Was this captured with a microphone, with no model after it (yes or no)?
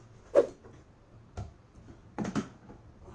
yes